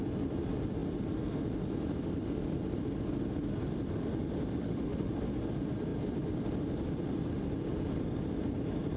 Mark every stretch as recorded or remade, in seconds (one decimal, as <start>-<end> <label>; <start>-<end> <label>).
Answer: 0.0-4.6 recorded; 4.6-5.1 remade; 5.1-9.0 recorded